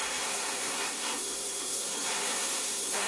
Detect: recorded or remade remade